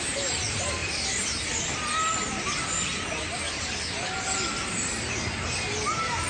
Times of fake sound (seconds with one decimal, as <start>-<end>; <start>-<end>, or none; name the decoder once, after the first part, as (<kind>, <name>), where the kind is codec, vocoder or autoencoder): none